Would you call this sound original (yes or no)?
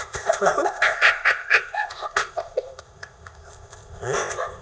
no